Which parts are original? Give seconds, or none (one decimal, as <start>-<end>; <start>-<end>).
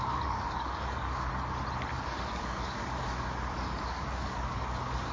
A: 1.3-1.9